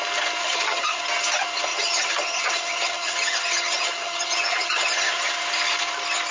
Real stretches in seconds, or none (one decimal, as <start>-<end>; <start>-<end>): 0.0-0.4; 1.0-1.7; 5.3-6.3